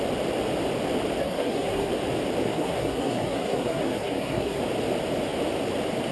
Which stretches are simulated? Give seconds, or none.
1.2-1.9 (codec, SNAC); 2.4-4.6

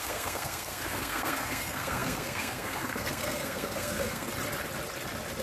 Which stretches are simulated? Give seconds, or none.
0.0-4.3 (codec, SNAC)